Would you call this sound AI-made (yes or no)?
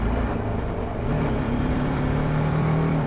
yes